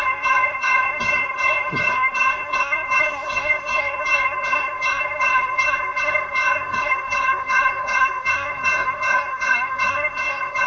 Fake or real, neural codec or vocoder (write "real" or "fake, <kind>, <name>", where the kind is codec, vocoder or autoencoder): fake, codec, SNAC